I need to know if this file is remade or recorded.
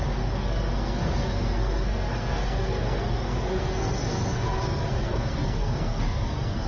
remade